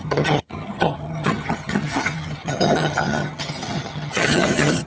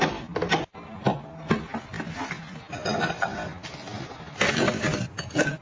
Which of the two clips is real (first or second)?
second